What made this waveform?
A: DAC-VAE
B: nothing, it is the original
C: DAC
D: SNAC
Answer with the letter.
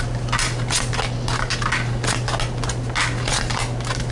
B